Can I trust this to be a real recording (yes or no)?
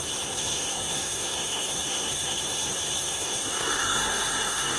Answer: no